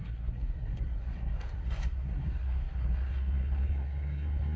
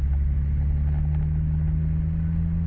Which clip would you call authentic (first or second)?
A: second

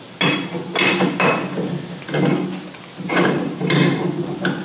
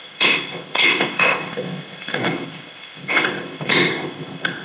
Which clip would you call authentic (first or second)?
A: first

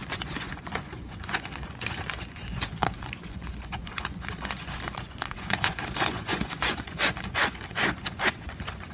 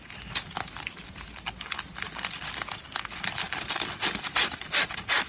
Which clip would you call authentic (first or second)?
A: second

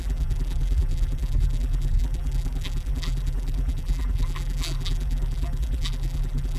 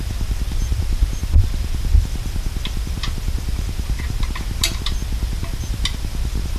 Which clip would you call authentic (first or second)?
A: second